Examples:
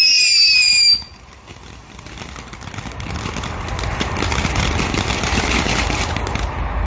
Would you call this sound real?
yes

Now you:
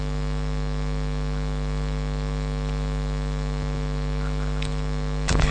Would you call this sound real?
no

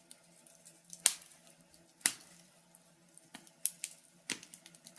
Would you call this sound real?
yes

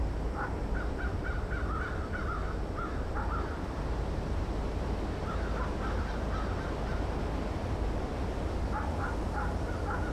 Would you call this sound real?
yes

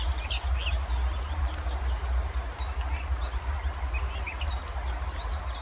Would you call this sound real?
yes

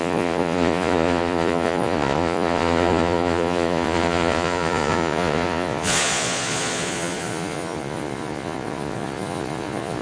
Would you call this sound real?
no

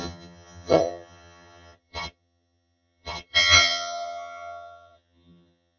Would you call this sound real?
no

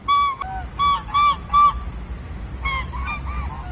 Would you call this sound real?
yes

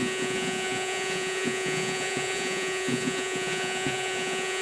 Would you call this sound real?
no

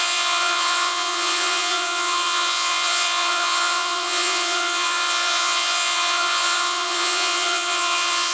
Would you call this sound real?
no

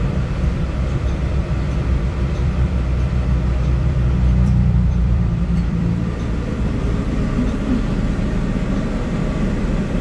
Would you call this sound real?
no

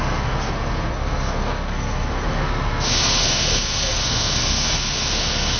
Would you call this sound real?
no